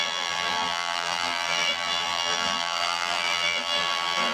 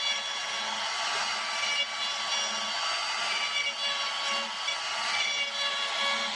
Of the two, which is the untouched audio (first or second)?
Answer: second